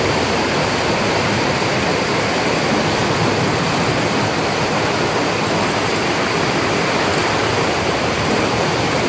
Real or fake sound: fake